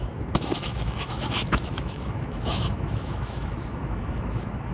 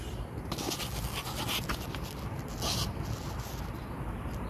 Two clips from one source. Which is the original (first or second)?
second